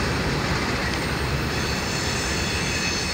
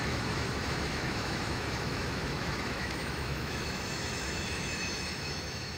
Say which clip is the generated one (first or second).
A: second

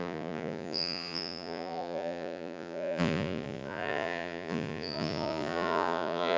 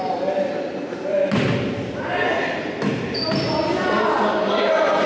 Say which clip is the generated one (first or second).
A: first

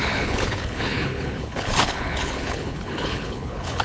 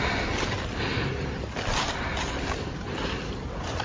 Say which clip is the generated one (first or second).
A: first